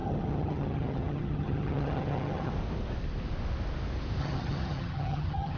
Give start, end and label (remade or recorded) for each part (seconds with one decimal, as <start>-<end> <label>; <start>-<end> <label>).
0.0-2.5 remade; 2.5-4.2 recorded; 4.2-5.6 remade